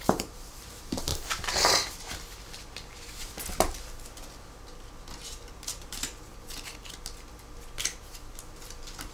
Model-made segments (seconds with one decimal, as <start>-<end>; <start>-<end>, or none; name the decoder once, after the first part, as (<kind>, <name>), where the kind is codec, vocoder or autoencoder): 0.0-1.1 (vocoder, BigVGAN v2); 5.5-6.3; 8.5-9.1